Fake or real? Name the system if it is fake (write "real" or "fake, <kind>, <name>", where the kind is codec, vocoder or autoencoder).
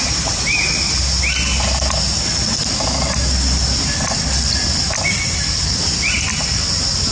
real